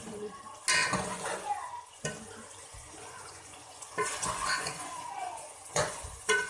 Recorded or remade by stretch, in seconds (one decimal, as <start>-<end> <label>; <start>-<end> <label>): 0.0-0.8 recorded; 0.8-2.0 remade; 2.0-2.6 recorded; 2.6-6.5 remade